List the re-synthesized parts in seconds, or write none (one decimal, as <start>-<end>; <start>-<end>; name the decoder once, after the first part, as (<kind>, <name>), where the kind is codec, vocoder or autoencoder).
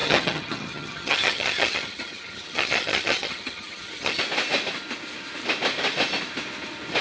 0.0-4.2 (vocoder, HiFi-GAN)